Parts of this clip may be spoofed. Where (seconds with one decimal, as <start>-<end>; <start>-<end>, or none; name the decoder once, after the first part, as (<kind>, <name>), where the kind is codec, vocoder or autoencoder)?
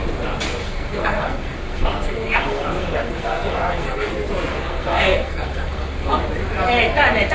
0.6-4.1 (codec, SNAC); 4.5-6.2